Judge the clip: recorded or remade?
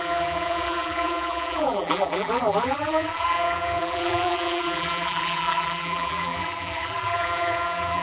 remade